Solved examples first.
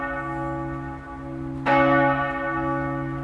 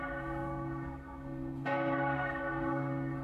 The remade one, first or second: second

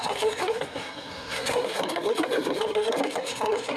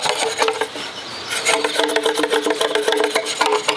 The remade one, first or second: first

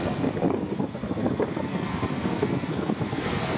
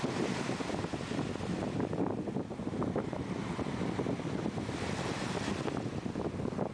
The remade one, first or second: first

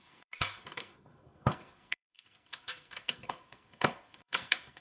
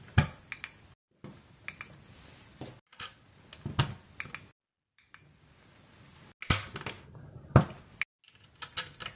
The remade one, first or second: first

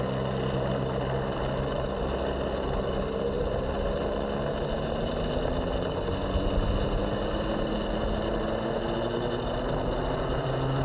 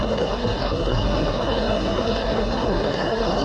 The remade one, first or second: second